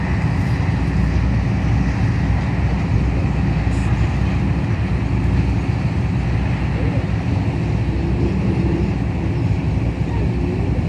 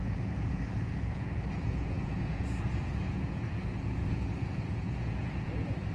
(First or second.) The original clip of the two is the first